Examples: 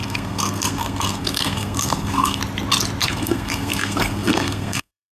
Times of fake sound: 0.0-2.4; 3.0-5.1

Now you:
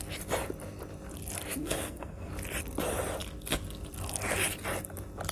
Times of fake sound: 1.6-2.3